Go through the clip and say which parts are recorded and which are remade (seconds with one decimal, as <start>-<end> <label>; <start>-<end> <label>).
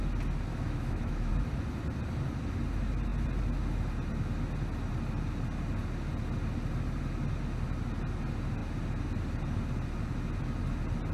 0.0-0.5 recorded; 0.5-1.3 remade; 1.3-11.1 recorded